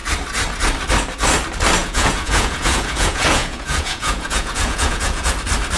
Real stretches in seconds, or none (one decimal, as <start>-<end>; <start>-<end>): 0.0-1.8; 5.3-5.8